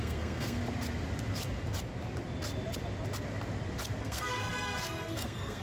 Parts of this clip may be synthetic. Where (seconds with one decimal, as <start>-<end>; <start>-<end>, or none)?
0.0-0.6; 4.0-5.6